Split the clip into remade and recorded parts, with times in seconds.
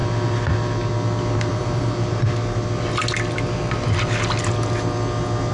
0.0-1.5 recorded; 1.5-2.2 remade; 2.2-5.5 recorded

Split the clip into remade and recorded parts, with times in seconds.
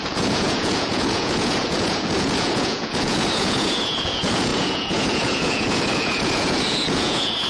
0.0-7.5 remade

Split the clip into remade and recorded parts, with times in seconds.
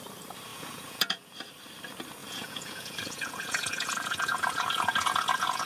0.0-0.5 recorded; 0.5-1.3 remade; 1.3-2.2 recorded; 2.2-5.7 remade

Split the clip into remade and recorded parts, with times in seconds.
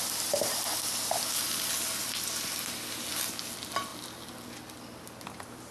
0.0-5.7 recorded